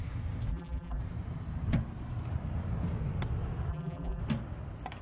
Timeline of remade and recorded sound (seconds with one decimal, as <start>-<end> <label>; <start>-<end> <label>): 0.0-0.5 recorded; 0.5-1.0 remade; 1.0-3.7 recorded; 3.7-4.2 remade; 4.2-5.0 recorded